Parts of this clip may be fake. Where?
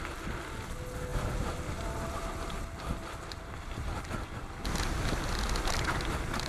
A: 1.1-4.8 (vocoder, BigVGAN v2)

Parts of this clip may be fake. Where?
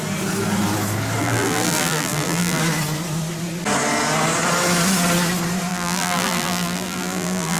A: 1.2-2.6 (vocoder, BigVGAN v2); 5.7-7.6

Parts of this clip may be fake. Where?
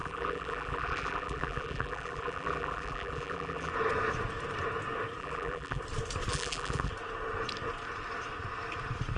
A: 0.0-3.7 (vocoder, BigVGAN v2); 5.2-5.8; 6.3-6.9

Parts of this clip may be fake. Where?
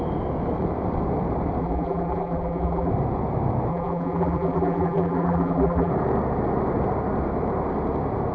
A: 1.6-2.9 (vocoder, BigVGAN v2); 3.7-5.9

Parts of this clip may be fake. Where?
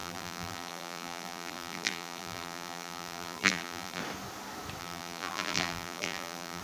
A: 0.0-4.0 (vocoder, BigVGAN v2); 4.8-6.6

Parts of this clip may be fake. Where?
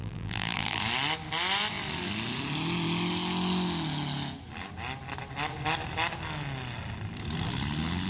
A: 0.0-0.8 (vocoder, BigVGAN v2)